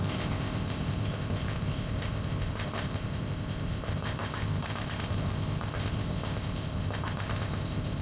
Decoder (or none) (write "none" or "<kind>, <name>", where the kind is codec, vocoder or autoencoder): codec, ZipCodec